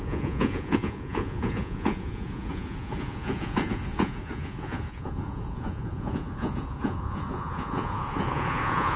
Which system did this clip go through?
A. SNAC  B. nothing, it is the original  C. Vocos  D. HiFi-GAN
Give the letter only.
C